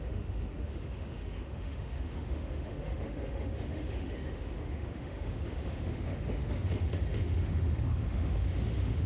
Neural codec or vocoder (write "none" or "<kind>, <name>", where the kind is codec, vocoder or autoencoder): autoencoder, DAC-VAE